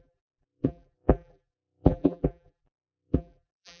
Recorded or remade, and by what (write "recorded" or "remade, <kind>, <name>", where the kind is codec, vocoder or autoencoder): remade, vocoder, BigVGAN v2